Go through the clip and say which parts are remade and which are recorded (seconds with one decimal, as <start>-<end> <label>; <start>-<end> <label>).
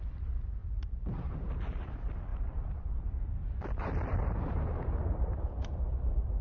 0.0-2.3 recorded; 2.3-4.4 remade; 4.4-6.4 recorded